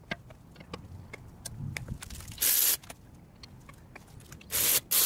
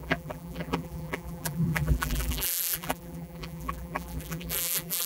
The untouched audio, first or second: first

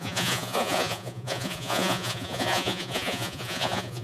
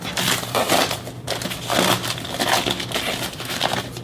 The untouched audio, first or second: second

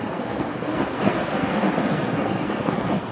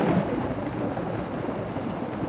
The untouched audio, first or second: second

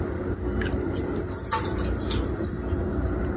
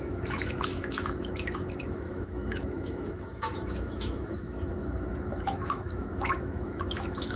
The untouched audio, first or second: first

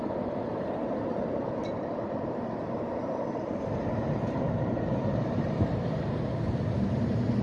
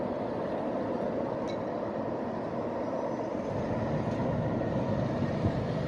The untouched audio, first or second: second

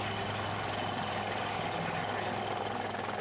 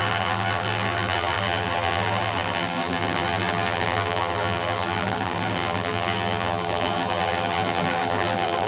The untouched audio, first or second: first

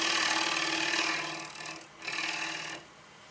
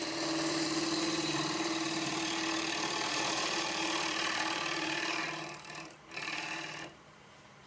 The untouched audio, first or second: first